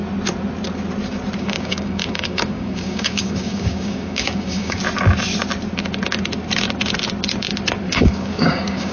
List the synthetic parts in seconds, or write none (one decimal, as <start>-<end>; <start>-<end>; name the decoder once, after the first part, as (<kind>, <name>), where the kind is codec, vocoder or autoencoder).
1.4-4.8 (codec, DAC); 7.8-8.9